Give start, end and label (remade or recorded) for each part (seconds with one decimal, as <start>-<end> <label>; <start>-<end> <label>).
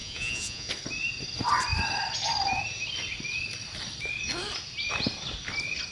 0.0-0.7 remade; 0.7-5.9 recorded